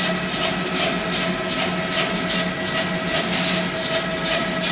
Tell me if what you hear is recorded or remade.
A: recorded